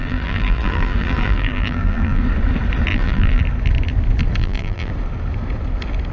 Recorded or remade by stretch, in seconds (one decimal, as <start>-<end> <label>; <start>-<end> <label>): 0.0-2.2 remade; 2.2-2.9 recorded; 2.9-3.4 remade; 3.4-4.4 recorded; 4.4-4.9 remade; 4.9-6.1 recorded